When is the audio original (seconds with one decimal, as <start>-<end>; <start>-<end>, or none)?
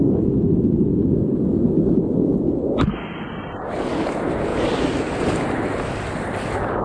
0.0-6.8